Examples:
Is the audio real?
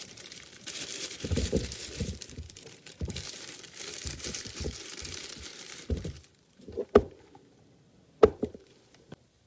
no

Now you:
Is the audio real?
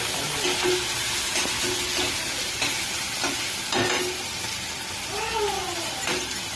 yes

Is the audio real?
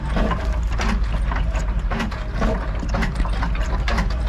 no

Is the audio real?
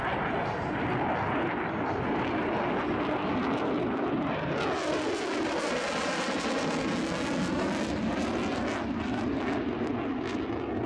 yes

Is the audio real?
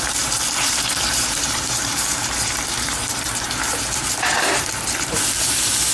no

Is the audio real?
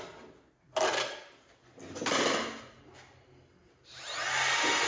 yes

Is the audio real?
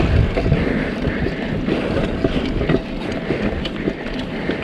yes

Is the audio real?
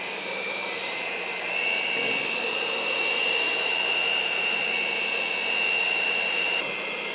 no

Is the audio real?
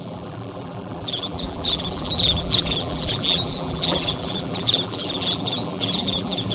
no